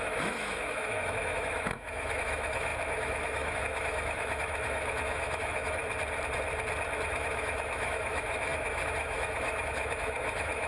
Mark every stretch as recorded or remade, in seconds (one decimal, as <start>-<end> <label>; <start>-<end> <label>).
0.0-5.8 remade; 5.8-7.1 recorded; 7.1-10.7 remade